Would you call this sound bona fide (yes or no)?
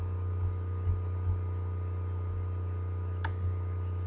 yes